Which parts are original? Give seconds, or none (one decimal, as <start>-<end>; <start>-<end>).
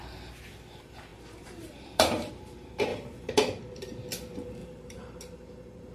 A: 0.0-1.1; 2.3-2.9; 3.6-4.6; 5.1-5.9